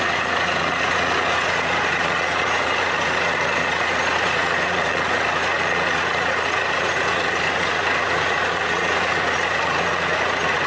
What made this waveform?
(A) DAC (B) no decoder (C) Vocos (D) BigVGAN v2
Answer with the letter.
C